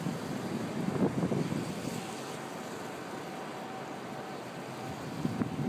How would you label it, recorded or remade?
recorded